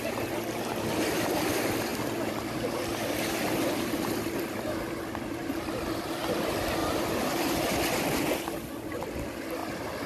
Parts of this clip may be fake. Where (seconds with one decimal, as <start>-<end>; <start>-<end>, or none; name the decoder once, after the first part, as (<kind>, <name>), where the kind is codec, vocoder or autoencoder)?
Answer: 1.9-6.2 (vocoder, BigVGAN v2); 6.8-8.0; 9.6-10.1